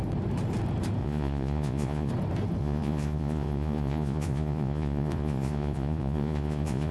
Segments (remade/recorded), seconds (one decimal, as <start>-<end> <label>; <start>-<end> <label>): 0.0-1.0 recorded; 1.0-2.1 remade; 2.1-2.6 recorded; 2.6-6.9 remade